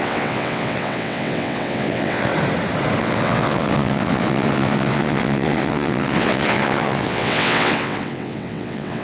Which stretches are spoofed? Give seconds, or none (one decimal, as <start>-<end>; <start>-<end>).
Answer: 0.0-2.3; 3.0-9.0